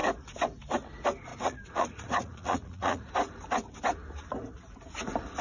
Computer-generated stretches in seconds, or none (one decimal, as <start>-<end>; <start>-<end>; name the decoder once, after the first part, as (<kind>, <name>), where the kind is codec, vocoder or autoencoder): 1.3-3.1 (vocoder, Vocos)